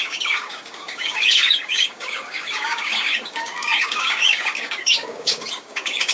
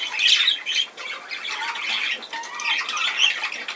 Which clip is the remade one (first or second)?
first